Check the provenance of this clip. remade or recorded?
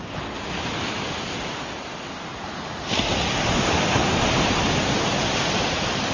remade